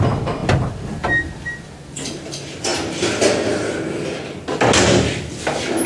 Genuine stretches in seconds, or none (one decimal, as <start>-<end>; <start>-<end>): 0.0-5.9